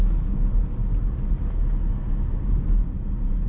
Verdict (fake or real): real